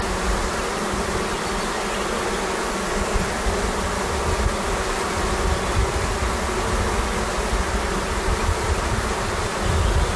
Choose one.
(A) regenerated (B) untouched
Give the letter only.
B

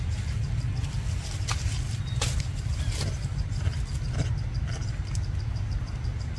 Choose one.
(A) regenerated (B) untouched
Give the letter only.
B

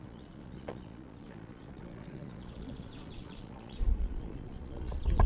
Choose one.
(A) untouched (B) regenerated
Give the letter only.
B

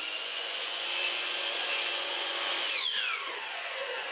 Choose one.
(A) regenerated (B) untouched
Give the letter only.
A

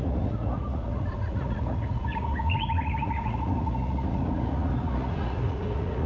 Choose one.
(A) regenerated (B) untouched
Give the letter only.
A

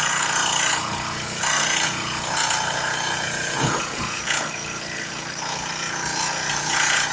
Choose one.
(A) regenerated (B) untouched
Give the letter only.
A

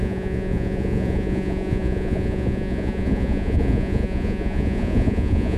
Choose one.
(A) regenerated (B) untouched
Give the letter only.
A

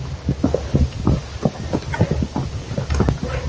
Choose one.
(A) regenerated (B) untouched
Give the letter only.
B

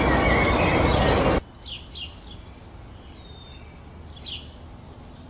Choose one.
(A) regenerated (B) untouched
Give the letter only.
B